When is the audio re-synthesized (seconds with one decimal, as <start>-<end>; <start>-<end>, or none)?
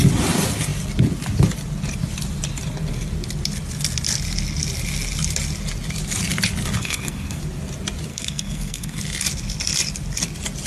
6.8-7.4; 8.1-9.0